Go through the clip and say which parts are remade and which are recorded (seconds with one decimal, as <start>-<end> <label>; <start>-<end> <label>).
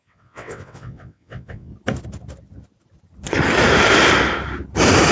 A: 0.0-1.7 remade; 1.7-5.1 recorded